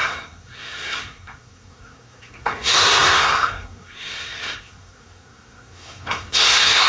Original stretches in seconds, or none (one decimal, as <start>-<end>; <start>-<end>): none